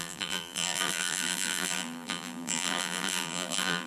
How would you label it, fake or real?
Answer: fake